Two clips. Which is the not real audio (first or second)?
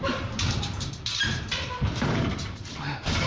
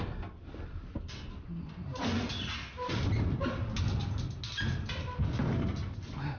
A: first